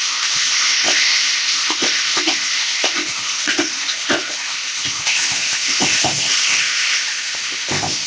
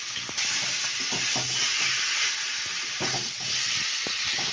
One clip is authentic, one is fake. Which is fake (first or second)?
first